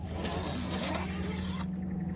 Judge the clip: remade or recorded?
recorded